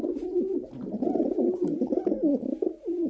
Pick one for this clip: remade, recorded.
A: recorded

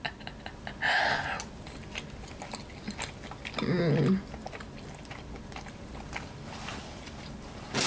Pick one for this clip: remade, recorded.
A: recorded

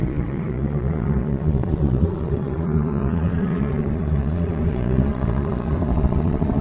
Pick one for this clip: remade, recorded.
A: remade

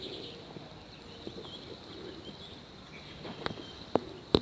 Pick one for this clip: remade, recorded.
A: recorded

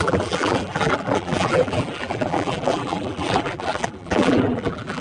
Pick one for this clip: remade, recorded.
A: remade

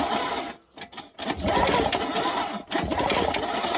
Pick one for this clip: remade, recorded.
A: recorded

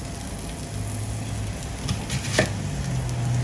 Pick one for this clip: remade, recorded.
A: recorded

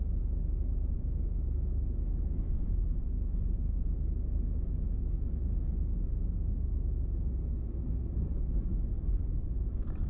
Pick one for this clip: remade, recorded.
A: remade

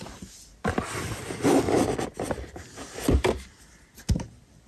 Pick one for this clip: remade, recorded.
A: recorded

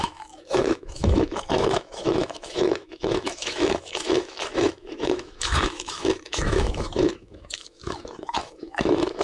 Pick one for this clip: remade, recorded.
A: remade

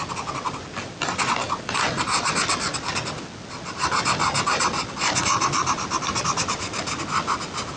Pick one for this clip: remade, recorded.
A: recorded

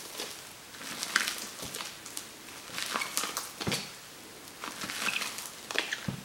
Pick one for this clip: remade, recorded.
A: recorded